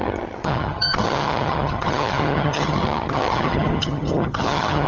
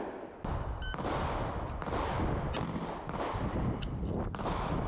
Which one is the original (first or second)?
second